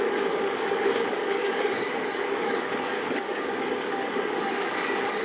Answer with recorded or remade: remade